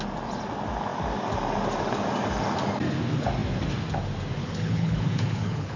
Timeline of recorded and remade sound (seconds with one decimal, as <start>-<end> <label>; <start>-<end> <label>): 0.0-4.4 recorded; 4.4-5.8 remade